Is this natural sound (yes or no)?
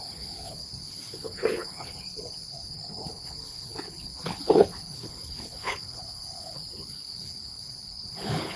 no